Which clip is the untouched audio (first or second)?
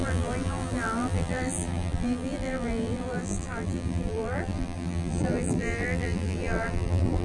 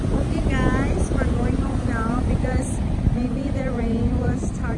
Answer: second